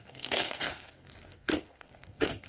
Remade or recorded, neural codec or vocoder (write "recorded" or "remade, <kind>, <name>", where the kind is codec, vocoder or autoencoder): remade, codec, SNAC